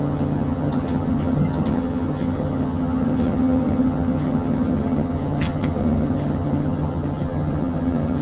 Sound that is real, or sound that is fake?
fake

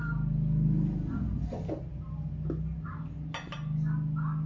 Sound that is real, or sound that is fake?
real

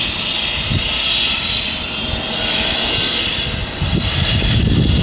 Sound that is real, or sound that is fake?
real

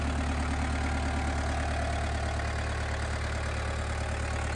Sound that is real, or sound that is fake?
real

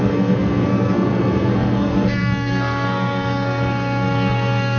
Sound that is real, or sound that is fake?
fake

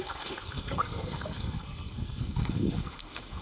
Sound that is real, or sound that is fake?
fake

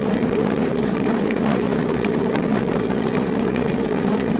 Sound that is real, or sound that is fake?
fake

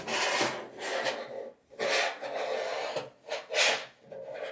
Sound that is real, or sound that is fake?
real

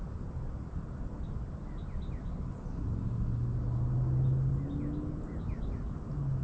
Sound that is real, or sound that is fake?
real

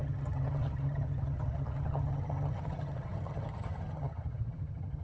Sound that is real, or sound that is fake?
fake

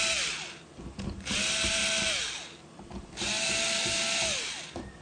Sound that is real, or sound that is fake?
real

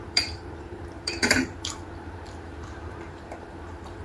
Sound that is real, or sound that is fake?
fake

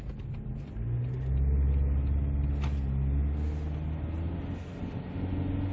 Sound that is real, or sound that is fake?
real